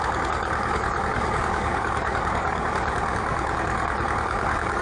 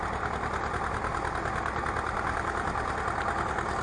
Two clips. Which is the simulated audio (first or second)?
first